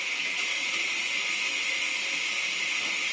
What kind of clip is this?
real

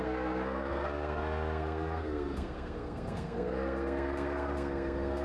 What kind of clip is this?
fake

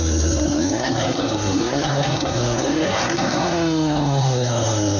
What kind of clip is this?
fake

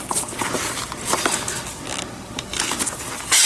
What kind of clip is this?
real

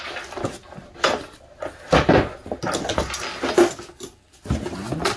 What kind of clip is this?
real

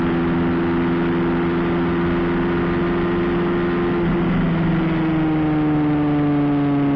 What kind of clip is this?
real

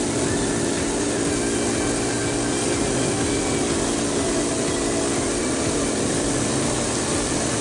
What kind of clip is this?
real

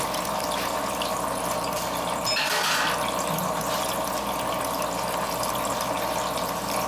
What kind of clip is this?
real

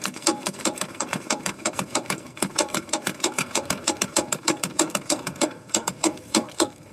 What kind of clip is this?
fake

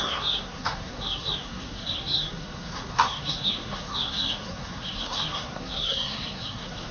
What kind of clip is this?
fake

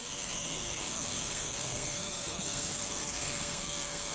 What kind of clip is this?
fake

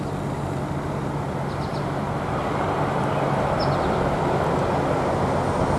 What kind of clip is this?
real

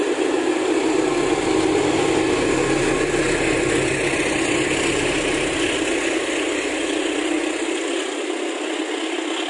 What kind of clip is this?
real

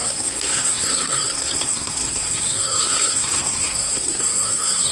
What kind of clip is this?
fake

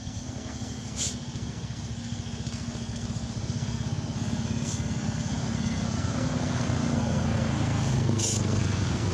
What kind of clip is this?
fake